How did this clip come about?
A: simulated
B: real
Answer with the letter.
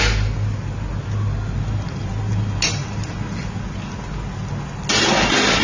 B